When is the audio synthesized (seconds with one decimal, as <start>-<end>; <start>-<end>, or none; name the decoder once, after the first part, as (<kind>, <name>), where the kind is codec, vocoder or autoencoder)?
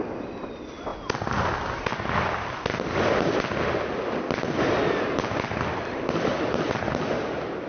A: none